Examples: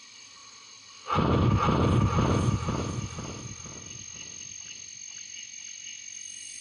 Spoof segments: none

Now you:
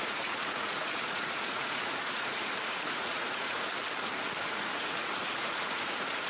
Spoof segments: 0.0-3.7; 4.4-6.3

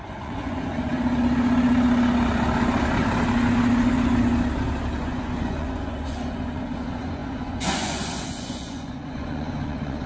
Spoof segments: 0.0-0.9; 5.0-10.1

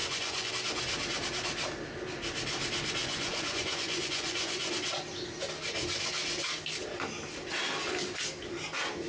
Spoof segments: 0.0-0.5; 3.0-4.7

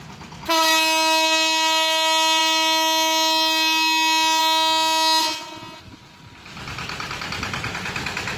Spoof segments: 5.2-5.8

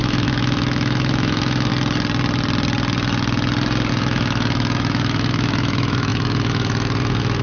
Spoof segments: 0.0-1.7; 3.9-7.4

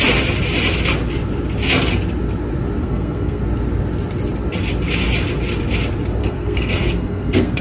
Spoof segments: 2.8-3.4; 6.2-7.6

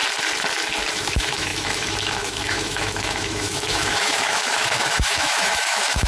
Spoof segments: 0.9-6.1